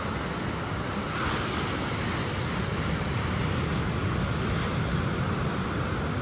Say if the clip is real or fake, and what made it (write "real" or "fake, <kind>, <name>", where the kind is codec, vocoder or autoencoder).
real